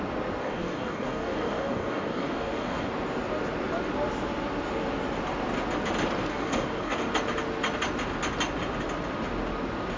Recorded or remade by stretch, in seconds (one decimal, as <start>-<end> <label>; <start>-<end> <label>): 0.0-0.4 recorded; 0.4-2.9 remade; 2.9-6.3 recorded; 6.3-7.1 remade; 7.1-10.0 recorded